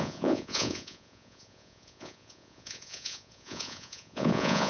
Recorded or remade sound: remade